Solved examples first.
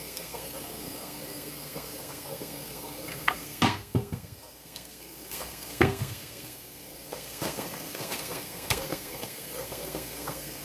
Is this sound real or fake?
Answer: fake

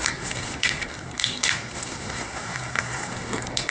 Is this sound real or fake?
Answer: fake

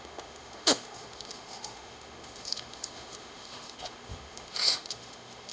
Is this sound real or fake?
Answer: fake